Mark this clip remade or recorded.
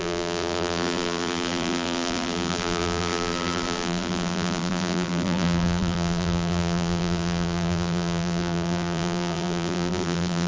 remade